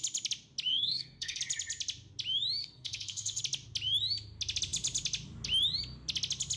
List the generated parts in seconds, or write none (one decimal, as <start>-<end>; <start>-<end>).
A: 0.7-1.4; 2.6-3.4